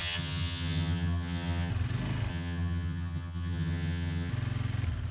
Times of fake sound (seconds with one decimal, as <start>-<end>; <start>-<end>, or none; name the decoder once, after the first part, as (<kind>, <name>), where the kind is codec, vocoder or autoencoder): 0.0-1.7 (vocoder, HiFi-GAN); 2.3-4.3